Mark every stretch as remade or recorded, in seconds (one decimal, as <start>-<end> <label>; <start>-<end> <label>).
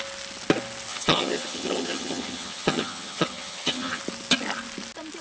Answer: 0.0-0.9 recorded; 0.9-4.0 remade; 4.0-5.2 recorded